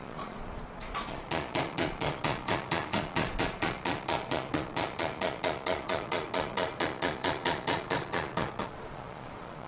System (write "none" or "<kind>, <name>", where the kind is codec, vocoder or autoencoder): vocoder, Vocos